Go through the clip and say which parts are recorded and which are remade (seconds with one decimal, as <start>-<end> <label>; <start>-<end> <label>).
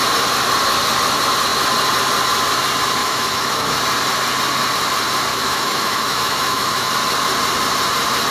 0.0-3.0 recorded; 3.0-3.8 remade; 3.8-5.3 recorded; 5.3-6.9 remade; 6.9-8.3 recorded